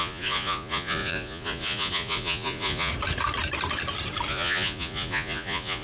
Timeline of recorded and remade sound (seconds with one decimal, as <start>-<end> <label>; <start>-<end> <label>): 0.0-2.9 remade; 2.9-4.3 recorded; 4.3-5.8 remade